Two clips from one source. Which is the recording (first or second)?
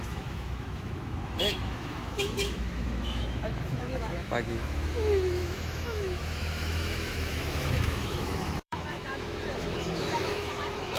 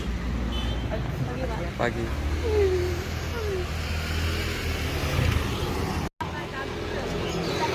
second